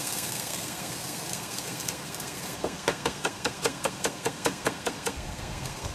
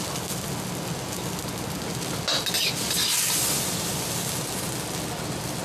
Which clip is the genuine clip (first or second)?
second